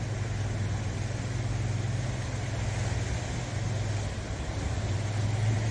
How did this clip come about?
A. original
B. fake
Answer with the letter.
A